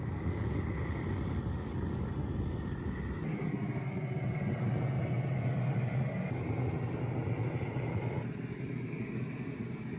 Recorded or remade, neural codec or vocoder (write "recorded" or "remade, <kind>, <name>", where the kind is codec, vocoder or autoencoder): recorded